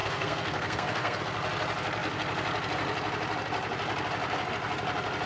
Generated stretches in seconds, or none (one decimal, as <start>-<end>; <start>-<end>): 0.0-1.2